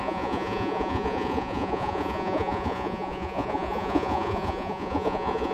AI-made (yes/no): yes